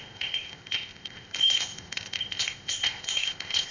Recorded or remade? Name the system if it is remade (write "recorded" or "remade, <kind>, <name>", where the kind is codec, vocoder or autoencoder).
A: remade, codec, ZipCodec